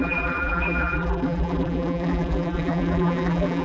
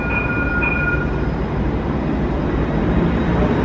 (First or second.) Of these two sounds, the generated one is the first